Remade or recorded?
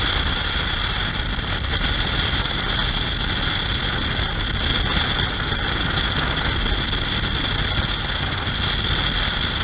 recorded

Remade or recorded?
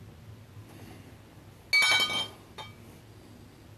recorded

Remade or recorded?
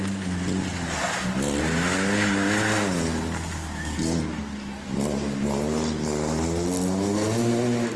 recorded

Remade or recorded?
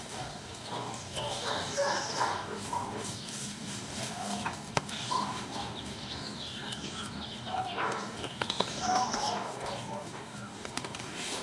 remade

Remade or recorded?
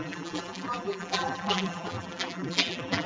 remade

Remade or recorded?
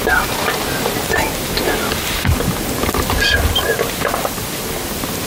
recorded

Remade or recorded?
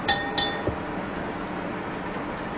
recorded